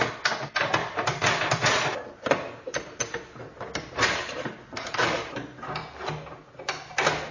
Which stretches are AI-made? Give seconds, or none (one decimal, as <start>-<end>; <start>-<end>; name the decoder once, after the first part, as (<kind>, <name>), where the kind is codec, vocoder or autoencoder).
none